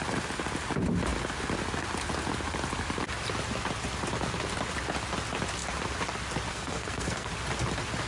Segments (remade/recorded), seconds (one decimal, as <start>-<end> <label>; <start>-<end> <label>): 0.0-6.5 recorded; 6.5-7.3 remade; 7.3-8.1 recorded